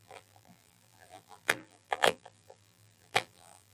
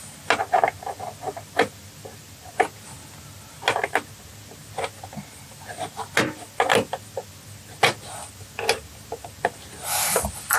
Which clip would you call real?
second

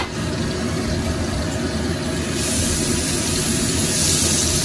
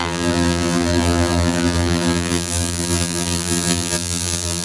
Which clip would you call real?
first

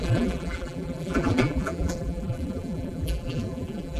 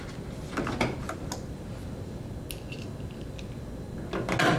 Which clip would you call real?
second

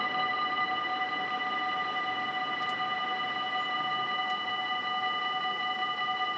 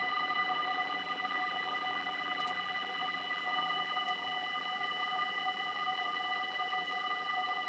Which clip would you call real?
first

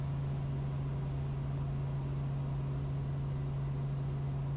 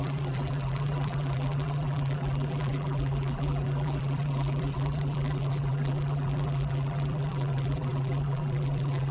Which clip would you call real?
first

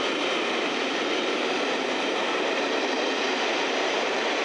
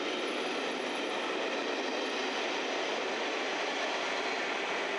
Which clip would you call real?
second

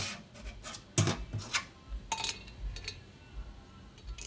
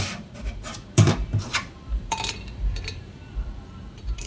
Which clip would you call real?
first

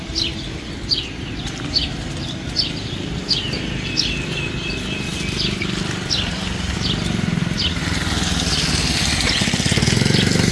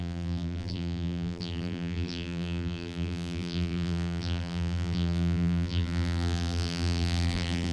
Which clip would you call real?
first